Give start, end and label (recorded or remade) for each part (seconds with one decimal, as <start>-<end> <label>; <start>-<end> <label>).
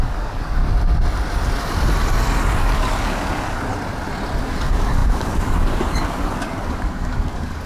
0.0-0.6 remade; 0.6-2.6 recorded; 2.6-3.7 remade; 3.7-4.4 recorded; 4.4-7.7 remade